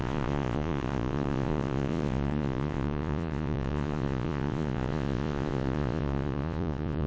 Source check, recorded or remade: remade